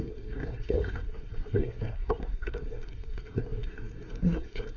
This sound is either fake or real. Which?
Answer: fake